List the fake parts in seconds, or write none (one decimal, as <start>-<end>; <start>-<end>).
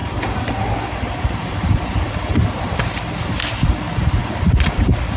0.0-2.4